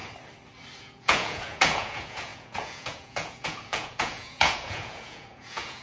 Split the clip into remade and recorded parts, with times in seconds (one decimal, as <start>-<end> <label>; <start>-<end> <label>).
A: 0.0-0.8 recorded; 0.8-5.8 remade